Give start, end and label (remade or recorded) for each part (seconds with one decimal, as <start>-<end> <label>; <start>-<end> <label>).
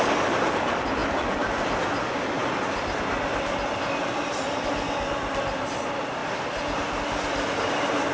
0.0-8.1 recorded